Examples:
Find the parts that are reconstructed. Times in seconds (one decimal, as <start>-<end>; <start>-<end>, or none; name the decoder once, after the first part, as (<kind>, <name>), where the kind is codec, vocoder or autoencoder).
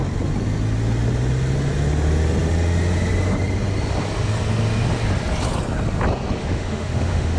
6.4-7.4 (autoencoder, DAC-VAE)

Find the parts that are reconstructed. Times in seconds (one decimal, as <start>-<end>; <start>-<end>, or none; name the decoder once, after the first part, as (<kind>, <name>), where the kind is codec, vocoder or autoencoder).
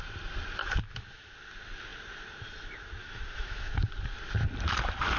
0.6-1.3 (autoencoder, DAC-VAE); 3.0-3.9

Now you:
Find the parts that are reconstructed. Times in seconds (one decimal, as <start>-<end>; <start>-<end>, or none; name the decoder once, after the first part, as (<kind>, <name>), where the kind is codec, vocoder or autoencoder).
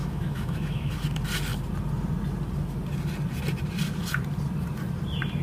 0.0-0.9 (autoencoder, DAC-VAE)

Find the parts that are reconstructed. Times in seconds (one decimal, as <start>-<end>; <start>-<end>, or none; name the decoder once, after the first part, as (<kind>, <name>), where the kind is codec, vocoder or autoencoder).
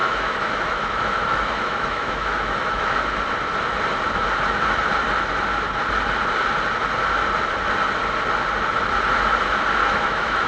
0.0-3.0 (autoencoder, DAC-VAE); 9.8-10.5